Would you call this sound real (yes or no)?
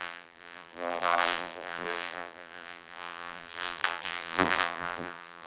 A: no